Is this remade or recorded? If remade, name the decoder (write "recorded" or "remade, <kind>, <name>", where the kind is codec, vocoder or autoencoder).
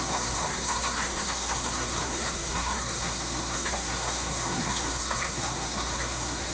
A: remade, codec, SNAC